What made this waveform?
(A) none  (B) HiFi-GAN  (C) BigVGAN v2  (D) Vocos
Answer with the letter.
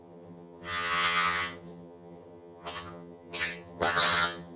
B